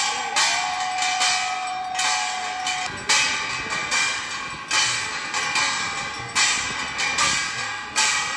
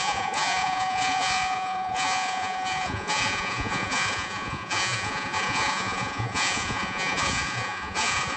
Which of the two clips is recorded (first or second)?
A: first